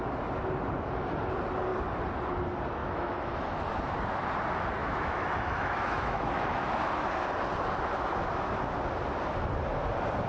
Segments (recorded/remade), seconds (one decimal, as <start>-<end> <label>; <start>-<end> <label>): 0.0-2.8 recorded; 2.8-3.6 remade; 3.6-4.8 recorded; 4.8-6.7 remade; 6.7-10.3 recorded